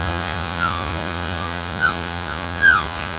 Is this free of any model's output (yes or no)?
no